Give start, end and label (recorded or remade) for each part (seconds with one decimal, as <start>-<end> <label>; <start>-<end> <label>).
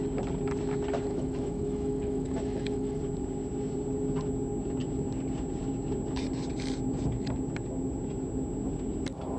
0.0-1.1 recorded; 1.1-3.0 remade; 3.0-9.4 recorded